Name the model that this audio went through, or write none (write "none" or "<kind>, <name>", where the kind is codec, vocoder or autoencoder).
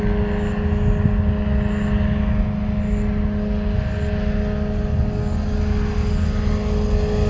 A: none